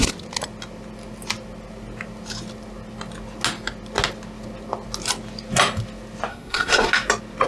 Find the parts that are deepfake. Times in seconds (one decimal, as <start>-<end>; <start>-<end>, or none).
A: 6.3-6.9